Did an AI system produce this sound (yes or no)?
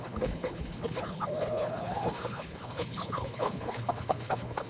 yes